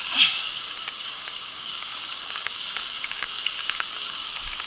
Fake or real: fake